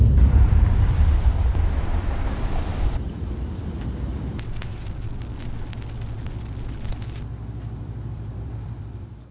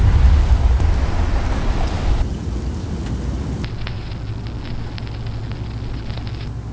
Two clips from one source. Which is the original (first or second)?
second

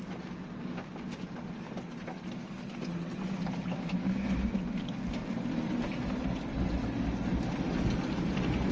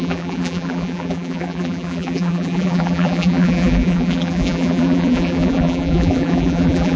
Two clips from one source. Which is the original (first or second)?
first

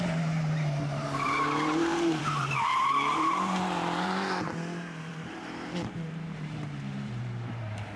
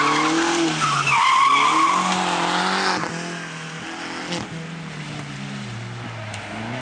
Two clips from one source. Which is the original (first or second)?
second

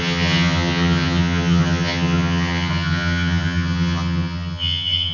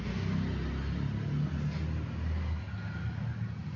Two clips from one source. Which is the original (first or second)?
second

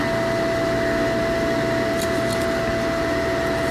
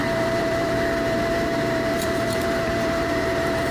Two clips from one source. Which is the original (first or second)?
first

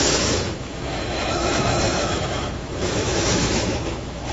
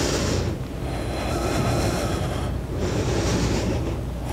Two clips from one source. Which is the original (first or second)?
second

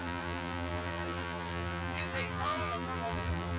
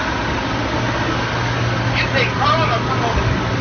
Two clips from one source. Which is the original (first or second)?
second